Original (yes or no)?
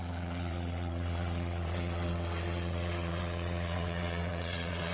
no